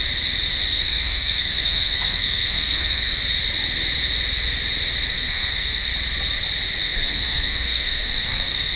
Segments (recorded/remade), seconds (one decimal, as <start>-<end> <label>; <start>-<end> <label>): 0.0-0.5 recorded; 0.5-3.2 remade; 3.2-5.1 recorded; 5.1-5.9 remade; 5.9-6.8 recorded; 6.8-8.8 remade

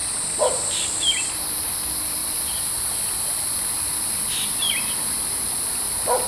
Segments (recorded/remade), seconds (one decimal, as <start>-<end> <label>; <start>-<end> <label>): 0.0-6.3 recorded

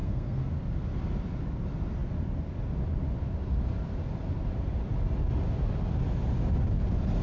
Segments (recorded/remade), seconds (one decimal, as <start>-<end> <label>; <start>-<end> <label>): 0.0-0.5 remade; 0.5-7.2 recorded

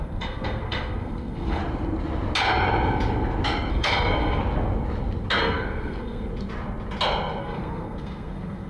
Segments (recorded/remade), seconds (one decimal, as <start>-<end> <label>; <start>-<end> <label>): 0.0-1.6 remade; 1.6-3.7 recorded; 3.7-4.4 remade; 4.4-5.4 recorded; 5.4-6.3 remade; 6.3-7.4 recorded; 7.4-8.7 remade

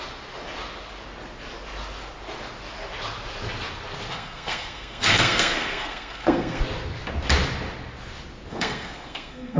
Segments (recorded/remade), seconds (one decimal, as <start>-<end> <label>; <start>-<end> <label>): 0.0-4.1 recorded; 4.1-6.6 remade; 6.6-8.5 recorded; 8.5-9.6 remade

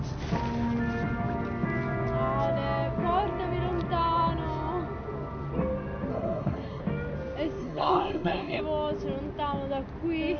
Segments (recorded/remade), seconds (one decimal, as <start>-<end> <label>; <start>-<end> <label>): 0.0-6.1 recorded; 6.1-6.8 remade; 6.8-7.6 recorded; 7.6-8.6 remade; 8.6-10.4 recorded

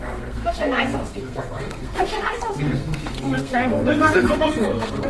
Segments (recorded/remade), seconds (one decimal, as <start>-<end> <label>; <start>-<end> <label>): 0.0-5.1 remade